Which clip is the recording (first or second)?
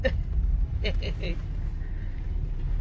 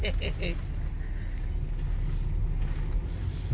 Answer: second